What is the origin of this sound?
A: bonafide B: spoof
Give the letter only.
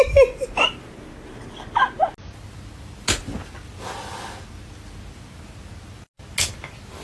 A